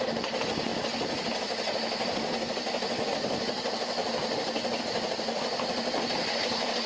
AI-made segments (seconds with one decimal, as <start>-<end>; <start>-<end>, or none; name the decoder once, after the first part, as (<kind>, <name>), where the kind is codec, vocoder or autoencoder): none